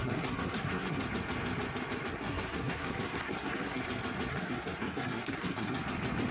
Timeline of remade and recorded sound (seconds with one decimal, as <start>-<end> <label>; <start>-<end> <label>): 0.0-1.0 remade; 1.0-2.1 recorded; 2.1-3.8 remade; 3.8-4.3 recorded; 4.3-5.8 remade; 5.8-6.3 recorded